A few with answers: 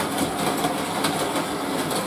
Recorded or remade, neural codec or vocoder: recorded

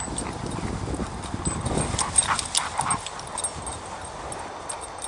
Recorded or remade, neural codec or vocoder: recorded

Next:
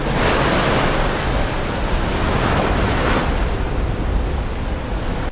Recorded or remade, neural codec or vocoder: recorded